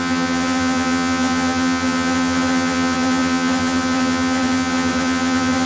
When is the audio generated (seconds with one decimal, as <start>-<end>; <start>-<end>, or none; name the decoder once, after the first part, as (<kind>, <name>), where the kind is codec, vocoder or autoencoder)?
0.0-5.7 (vocoder, HiFi-GAN)